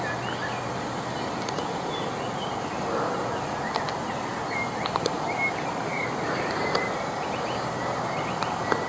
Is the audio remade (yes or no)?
no